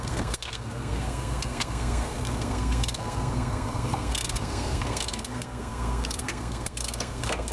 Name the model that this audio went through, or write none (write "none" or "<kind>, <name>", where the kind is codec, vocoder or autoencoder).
codec, SNAC